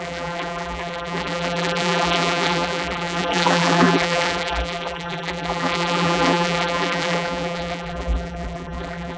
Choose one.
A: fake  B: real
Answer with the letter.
A